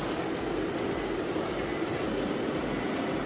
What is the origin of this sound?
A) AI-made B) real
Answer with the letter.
B